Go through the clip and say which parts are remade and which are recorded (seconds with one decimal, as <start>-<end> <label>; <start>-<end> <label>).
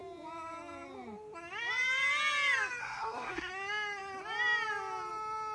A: 0.0-2.8 recorded; 2.8-3.5 remade; 3.5-5.5 recorded